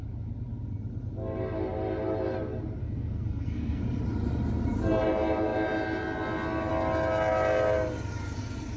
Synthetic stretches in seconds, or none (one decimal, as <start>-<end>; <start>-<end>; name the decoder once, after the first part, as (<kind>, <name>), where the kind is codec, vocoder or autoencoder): 2.8-3.8 (codec, SNAC)